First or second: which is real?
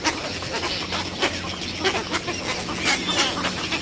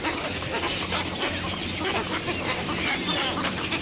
first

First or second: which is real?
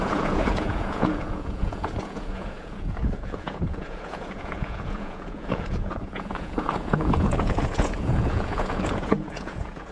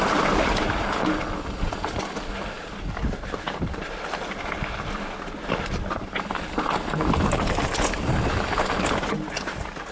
second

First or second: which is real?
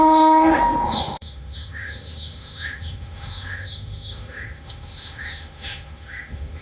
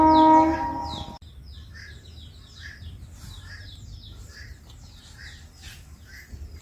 second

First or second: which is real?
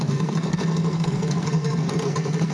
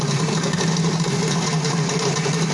second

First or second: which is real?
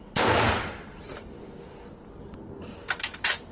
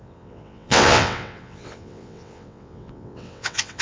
first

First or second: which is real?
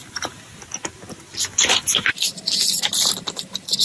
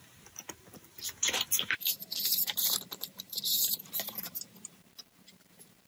first